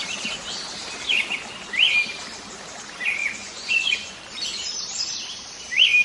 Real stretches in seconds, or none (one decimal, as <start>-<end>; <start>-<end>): 0.0-3.2; 4.2-6.0